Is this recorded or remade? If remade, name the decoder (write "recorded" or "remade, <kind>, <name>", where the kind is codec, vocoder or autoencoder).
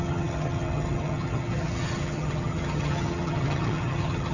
remade, vocoder, HiFi-GAN